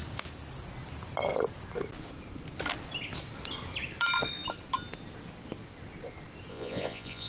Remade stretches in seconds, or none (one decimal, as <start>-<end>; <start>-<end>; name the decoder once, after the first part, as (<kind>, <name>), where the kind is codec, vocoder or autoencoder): 6.5-7.3 (vocoder, Vocos)